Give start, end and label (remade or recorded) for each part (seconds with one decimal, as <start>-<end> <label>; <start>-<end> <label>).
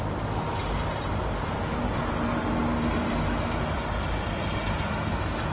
0.0-5.5 recorded